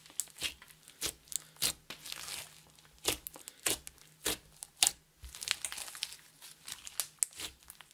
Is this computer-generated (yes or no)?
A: no